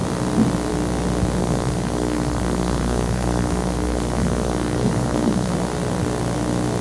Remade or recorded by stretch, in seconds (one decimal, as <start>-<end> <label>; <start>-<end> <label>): 0.0-1.4 recorded; 1.4-5.5 remade; 5.5-6.8 recorded